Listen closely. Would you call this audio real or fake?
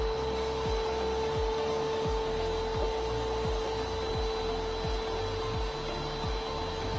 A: real